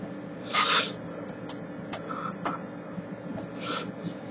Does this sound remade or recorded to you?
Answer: recorded